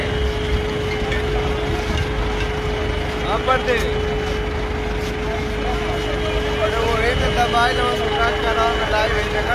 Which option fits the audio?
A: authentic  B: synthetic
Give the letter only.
A